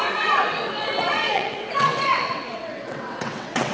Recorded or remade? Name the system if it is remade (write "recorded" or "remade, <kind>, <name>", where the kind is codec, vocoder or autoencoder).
remade, vocoder, WaveNeXt